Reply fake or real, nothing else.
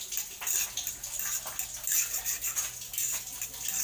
real